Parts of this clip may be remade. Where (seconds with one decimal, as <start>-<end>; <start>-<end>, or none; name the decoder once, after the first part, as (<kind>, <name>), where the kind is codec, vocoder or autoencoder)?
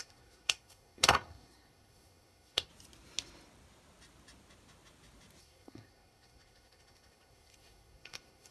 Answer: 0.0-2.7 (codec, SNAC); 5.4-8.5